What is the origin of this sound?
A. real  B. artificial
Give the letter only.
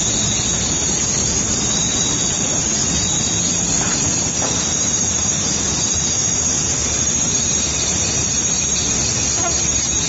A